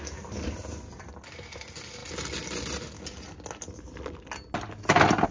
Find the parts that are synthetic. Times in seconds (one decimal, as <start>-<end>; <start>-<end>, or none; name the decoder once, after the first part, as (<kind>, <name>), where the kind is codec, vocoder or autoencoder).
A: none